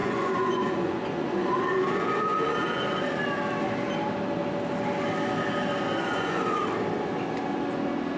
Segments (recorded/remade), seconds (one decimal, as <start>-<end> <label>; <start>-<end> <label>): 0.0-3.2 remade; 3.2-6.0 recorded; 6.0-6.6 remade; 6.6-8.2 recorded